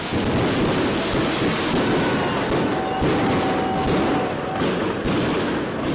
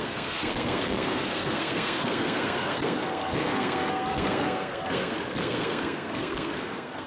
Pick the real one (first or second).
first